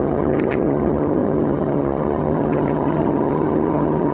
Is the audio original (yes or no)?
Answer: no